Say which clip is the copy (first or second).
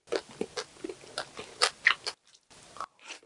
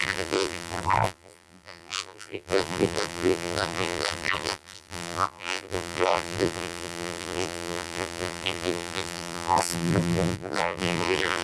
second